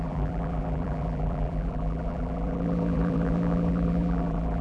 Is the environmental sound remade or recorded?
remade